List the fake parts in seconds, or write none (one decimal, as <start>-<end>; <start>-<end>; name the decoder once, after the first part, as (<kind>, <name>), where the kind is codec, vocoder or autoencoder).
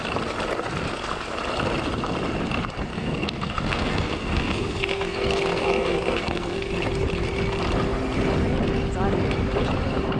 2.9-6.7 (codec, SNAC)